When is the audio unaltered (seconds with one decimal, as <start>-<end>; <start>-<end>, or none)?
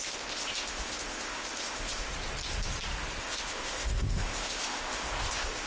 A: 2.1-3.2